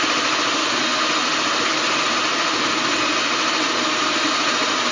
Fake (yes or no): no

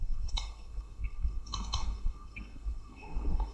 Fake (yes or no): yes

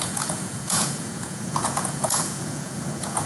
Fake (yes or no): yes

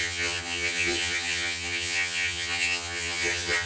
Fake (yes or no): yes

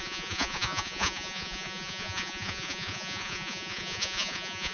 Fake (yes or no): yes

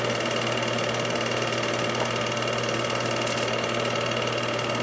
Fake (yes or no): no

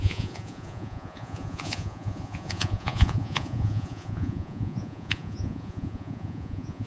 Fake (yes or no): yes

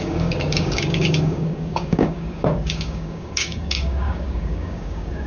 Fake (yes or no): yes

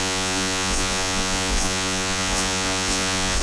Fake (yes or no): yes